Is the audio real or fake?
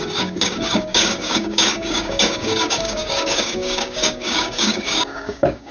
fake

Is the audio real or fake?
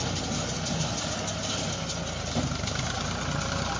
real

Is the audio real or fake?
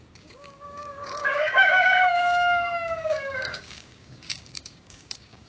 fake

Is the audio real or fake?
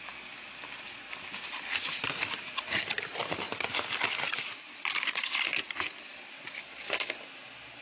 real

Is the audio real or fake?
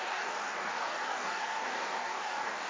fake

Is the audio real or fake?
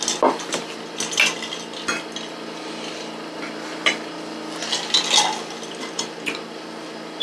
real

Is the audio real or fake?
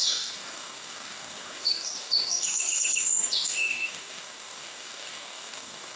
fake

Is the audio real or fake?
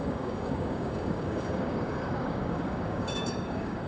fake